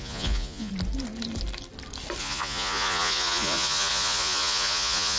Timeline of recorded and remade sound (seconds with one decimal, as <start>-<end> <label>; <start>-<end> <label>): 0.0-0.7 remade; 0.7-2.2 recorded; 2.2-5.2 remade